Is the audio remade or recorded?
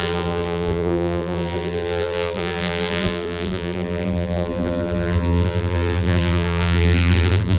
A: remade